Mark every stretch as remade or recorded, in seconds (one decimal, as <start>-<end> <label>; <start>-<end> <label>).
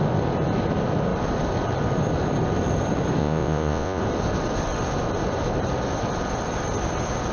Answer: 0.0-3.2 recorded; 3.2-4.0 remade; 4.0-7.3 recorded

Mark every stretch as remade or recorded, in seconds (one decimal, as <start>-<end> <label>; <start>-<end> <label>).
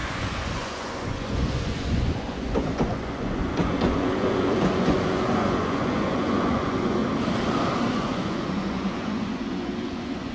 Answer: 0.0-7.0 remade; 7.0-7.9 recorded; 7.9-10.3 remade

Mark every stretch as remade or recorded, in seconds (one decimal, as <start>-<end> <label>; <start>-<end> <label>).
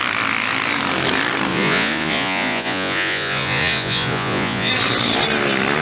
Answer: 0.0-1.5 recorded; 1.5-4.7 remade; 4.7-5.8 recorded